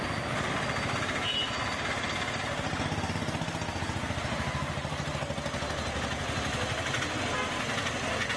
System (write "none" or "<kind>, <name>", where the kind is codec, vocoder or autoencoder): none